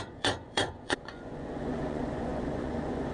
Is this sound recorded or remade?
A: remade